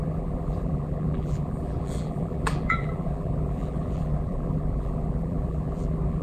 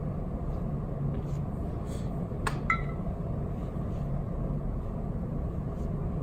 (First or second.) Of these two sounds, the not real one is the first